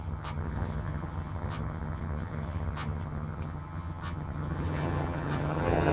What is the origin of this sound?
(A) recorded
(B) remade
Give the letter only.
B